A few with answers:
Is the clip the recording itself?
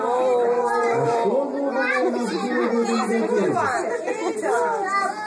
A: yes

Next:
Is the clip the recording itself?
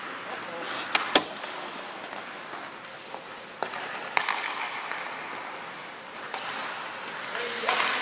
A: yes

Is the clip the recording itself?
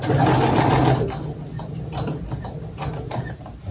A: yes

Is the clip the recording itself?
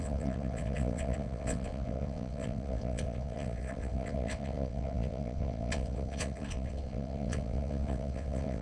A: no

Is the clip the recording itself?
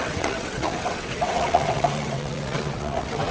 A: no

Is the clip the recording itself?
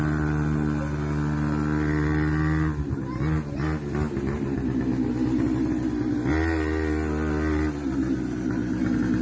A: yes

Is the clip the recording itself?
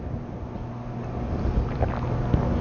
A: yes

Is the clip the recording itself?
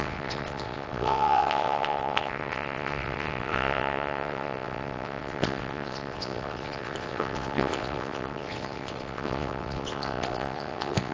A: no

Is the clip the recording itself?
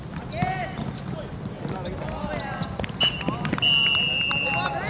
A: yes